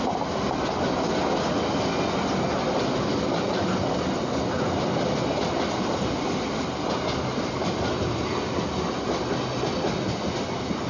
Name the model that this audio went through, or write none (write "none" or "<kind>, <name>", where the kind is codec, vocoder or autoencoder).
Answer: none